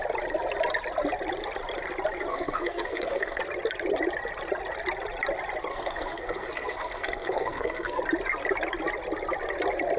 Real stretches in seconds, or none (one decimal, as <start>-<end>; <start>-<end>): 0.0-2.3; 3.4-5.7; 8.0-10.0